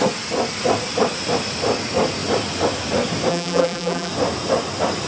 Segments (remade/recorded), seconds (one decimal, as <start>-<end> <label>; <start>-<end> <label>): 0.0-3.3 recorded; 3.3-4.1 remade; 4.1-5.1 recorded